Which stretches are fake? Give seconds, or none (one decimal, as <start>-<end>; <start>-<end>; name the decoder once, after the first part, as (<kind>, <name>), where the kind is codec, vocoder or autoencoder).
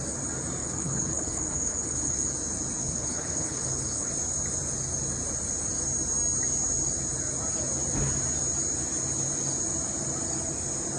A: 0.6-2.3 (codec, HILCodec); 2.8-4.1